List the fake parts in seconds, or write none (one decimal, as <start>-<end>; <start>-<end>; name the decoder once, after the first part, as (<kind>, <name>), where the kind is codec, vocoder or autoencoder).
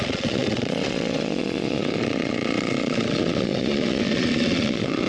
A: 0.0-5.1 (vocoder, Vocos)